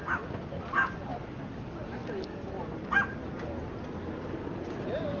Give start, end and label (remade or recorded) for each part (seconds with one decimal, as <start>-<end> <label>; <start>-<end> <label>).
0.0-5.2 recorded